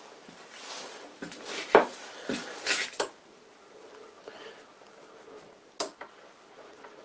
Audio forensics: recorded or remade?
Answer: recorded